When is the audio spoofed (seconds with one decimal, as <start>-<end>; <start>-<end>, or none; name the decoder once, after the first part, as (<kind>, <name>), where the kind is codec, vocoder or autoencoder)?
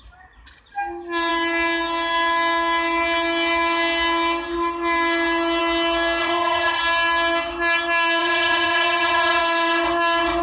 6.2-6.8 (vocoder, HiFi-GAN); 8.2-9.4